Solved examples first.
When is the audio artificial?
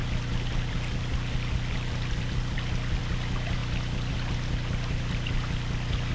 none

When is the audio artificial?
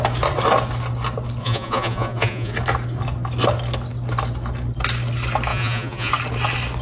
1.4-2.5 (vocoder, Vocos); 5.5-6.1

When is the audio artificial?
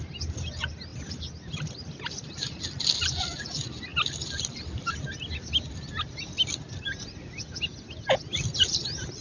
none